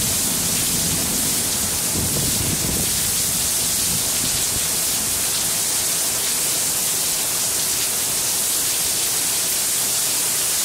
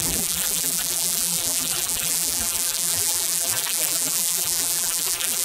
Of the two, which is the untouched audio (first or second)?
first